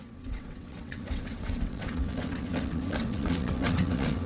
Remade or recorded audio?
remade